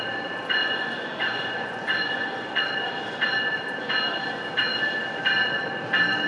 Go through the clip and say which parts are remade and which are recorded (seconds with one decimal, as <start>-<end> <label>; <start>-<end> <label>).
0.0-0.6 recorded; 0.6-2.6 remade; 2.6-6.3 recorded